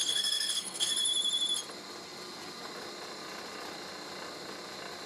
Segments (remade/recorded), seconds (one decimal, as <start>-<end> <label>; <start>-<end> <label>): 0.0-0.9 remade; 0.9-5.1 recorded